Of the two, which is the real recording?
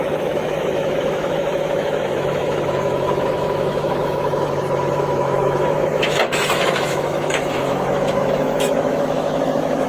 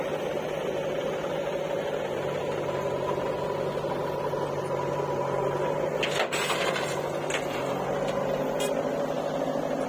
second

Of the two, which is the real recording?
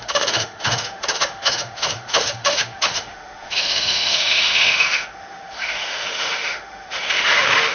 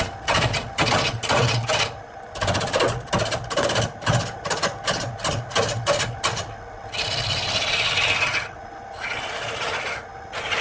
second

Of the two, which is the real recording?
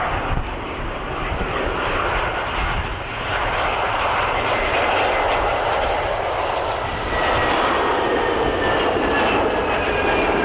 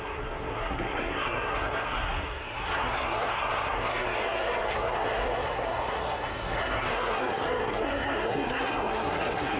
first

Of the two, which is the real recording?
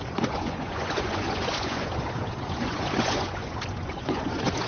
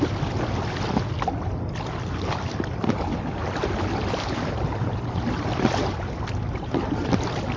second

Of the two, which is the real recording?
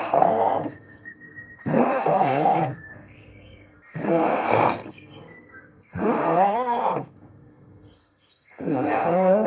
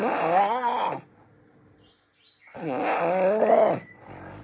second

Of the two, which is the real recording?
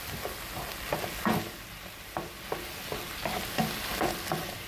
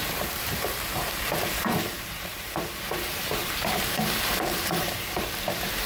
first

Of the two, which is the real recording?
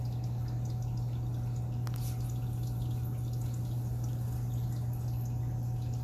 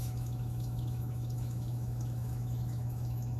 first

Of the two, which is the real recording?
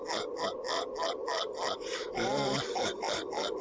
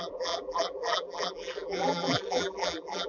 first